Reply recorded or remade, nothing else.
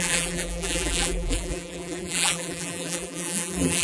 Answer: remade